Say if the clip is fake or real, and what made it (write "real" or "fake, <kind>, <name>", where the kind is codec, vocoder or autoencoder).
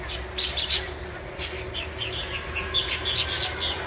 real